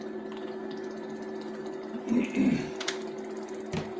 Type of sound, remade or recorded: recorded